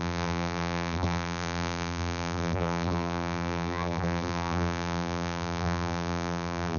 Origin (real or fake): fake